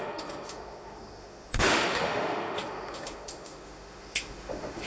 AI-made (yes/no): yes